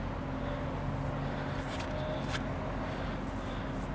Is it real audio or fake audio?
real